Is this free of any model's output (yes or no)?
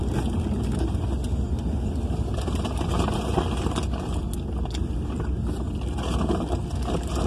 yes